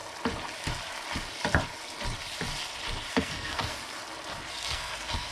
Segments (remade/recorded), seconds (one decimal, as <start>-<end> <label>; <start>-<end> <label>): 0.0-3.1 recorded; 3.1-3.8 remade; 3.8-4.5 recorded; 4.5-5.3 remade

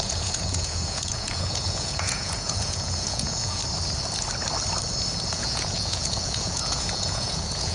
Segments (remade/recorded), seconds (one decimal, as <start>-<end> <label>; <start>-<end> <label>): 0.0-3.6 remade; 3.6-5.1 recorded; 5.1-7.7 remade

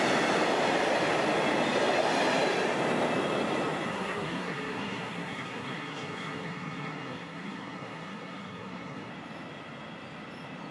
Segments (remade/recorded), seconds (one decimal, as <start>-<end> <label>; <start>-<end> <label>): 0.0-3.9 recorded; 3.9-9.1 remade; 9.1-10.7 recorded

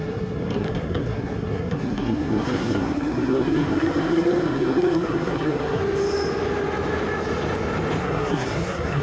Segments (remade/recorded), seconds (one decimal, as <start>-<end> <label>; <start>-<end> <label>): 0.0-5.8 remade; 5.8-8.0 recorded; 8.0-9.0 remade